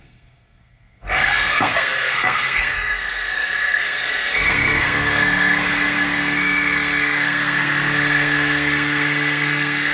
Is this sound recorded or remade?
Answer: remade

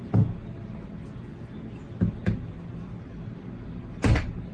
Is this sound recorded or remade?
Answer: recorded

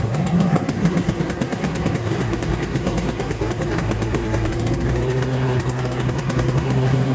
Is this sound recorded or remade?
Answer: remade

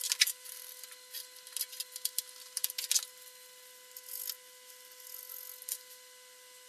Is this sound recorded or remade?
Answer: recorded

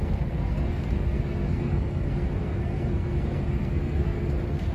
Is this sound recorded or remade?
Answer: remade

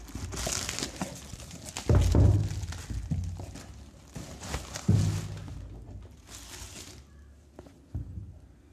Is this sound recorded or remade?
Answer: recorded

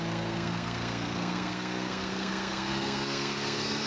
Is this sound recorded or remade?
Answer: remade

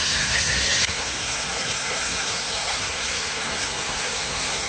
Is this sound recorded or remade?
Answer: remade